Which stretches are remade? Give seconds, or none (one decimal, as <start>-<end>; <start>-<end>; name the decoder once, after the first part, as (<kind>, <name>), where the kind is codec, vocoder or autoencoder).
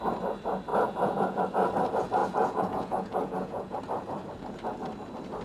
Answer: 0.7-1.4 (vocoder, Vocos); 2.2-3.8